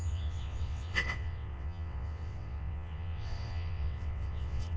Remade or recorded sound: remade